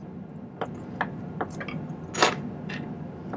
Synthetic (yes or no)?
no